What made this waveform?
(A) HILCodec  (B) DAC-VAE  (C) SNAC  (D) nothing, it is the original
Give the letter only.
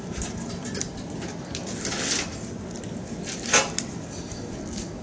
D